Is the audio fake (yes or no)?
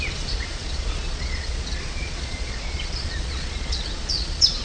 yes